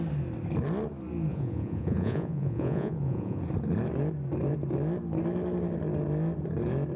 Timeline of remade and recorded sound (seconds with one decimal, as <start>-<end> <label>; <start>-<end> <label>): 0.0-1.3 recorded; 1.3-3.4 remade; 3.4-7.0 recorded